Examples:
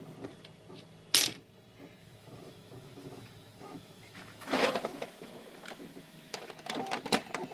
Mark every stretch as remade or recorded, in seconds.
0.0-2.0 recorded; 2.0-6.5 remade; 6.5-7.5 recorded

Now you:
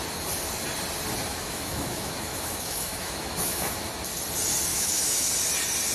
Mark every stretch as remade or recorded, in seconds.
0.0-1.3 recorded; 1.3-3.7 remade; 3.7-4.7 recorded; 4.7-5.3 remade; 5.3-5.9 recorded

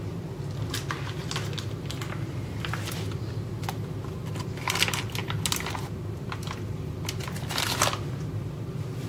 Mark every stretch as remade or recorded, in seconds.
0.0-9.1 recorded